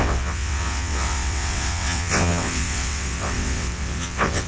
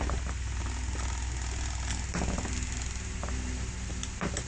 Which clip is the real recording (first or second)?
second